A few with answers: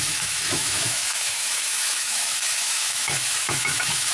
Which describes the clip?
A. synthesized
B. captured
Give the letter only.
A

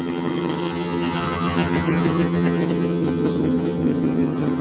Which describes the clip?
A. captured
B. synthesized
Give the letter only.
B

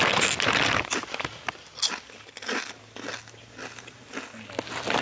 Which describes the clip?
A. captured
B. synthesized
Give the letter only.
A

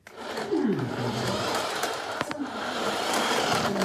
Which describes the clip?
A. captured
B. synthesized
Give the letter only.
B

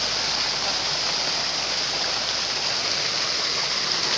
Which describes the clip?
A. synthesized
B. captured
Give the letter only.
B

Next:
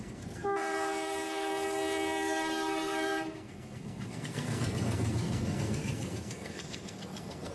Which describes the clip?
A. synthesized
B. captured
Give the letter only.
A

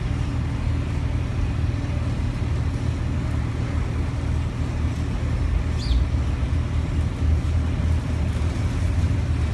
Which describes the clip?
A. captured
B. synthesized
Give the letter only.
A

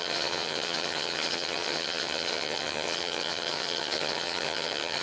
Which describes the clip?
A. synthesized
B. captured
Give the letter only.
A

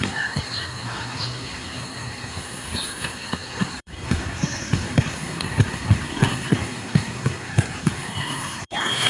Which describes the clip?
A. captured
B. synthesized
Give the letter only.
B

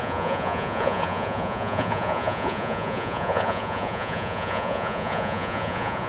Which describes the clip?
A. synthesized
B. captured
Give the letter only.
A